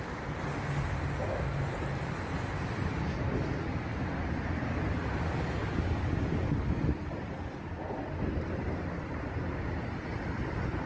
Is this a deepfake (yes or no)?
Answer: no